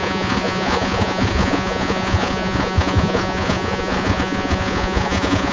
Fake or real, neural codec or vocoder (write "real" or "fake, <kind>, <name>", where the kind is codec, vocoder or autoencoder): fake, vocoder, Vocos